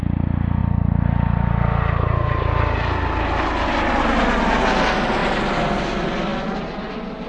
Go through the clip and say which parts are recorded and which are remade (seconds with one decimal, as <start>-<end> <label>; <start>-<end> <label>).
0.0-7.3 recorded